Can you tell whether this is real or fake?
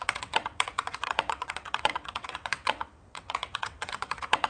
fake